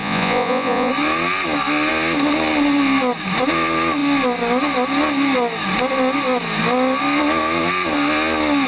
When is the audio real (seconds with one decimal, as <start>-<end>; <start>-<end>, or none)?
0.9-8.7